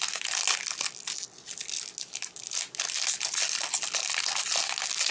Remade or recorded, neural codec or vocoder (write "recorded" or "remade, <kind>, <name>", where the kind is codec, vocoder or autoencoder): recorded